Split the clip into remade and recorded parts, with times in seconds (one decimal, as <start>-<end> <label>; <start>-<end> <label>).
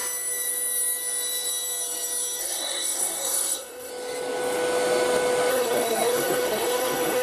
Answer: 0.0-2.4 recorded; 2.4-3.9 remade; 3.9-5.5 recorded; 5.5-7.2 remade